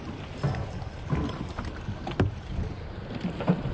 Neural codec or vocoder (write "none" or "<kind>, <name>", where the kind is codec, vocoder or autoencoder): none